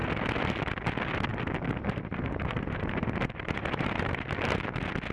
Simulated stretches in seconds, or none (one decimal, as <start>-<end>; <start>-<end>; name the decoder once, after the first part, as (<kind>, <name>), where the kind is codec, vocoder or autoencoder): 1.3-4.4 (vocoder, BigVGAN v2)